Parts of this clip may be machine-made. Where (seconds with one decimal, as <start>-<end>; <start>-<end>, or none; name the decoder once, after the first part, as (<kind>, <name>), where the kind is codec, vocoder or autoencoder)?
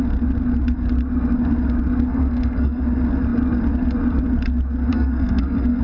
2.1-2.8 (codec, SNAC); 4.9-5.8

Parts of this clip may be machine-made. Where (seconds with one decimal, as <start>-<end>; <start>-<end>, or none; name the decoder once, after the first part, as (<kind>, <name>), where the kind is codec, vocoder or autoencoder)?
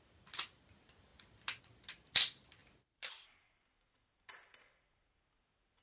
none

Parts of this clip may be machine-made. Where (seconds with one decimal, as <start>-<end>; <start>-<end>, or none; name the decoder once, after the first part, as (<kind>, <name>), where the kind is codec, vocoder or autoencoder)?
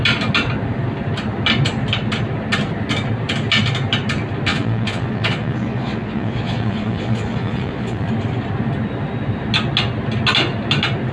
4.5-8.1 (vocoder, Vocos)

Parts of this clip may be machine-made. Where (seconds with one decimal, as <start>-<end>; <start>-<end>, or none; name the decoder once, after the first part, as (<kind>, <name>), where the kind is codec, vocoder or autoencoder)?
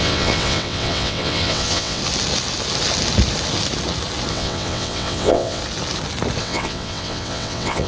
0.0-2.0 (vocoder, WaveNeXt); 4.3-5.6; 6.4-7.9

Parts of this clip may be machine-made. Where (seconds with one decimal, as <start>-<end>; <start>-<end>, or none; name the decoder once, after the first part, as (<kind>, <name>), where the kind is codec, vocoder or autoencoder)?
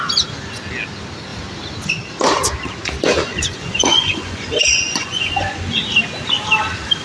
3.1-5.8 (vocoder, Vocos)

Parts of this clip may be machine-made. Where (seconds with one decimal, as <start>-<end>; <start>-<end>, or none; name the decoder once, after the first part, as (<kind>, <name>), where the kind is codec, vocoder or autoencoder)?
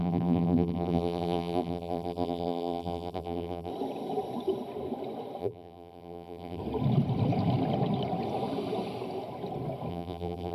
0.0-3.7 (vocoder, BigVGAN v2); 5.4-6.6; 9.9-10.5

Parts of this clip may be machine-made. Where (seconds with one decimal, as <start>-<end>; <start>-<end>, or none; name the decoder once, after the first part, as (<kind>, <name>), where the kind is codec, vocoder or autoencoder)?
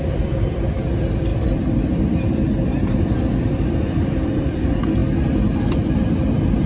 0.0-5.0 (vocoder, BigVGAN v2); 5.7-6.7